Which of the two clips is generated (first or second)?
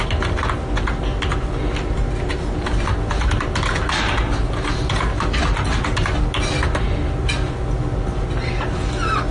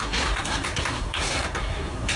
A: second